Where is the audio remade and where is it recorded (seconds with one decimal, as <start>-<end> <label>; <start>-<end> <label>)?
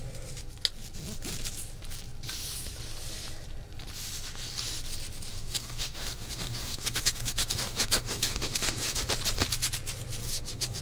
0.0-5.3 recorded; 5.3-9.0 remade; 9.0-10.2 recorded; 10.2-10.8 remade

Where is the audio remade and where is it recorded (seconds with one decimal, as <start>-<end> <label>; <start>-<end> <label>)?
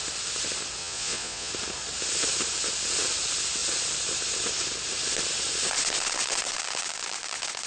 0.0-0.8 recorded; 0.8-1.5 remade; 1.5-7.7 recorded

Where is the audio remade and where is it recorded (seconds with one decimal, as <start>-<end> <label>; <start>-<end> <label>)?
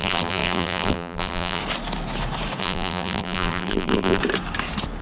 0.0-1.6 remade; 1.6-2.6 recorded; 2.6-4.2 remade; 4.2-5.0 recorded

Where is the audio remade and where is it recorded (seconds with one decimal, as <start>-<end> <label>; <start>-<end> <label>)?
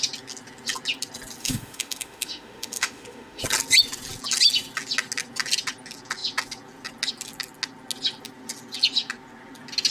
0.0-1.4 recorded; 1.4-3.4 remade; 3.4-9.9 recorded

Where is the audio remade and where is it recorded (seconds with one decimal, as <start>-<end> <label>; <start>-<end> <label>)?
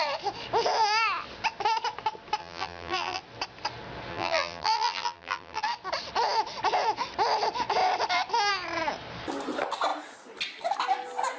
0.0-2.4 recorded; 2.4-3.2 remade; 3.2-4.1 recorded; 4.1-5.6 remade; 5.6-11.4 recorded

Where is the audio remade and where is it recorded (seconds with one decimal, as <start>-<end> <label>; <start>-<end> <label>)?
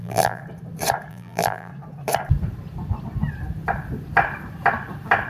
0.0-0.4 remade; 0.4-1.1 recorded; 1.1-1.7 remade; 1.7-5.3 recorded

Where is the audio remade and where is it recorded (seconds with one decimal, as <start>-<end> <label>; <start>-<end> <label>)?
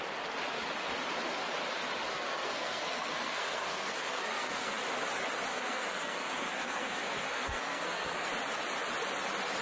0.0-2.1 recorded; 2.1-4.8 remade; 4.8-5.5 recorded; 5.5-8.3 remade; 8.3-9.6 recorded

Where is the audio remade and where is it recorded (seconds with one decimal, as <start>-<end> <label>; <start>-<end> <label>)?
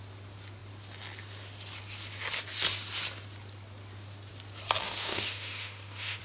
0.0-4.8 recorded; 4.8-6.2 remade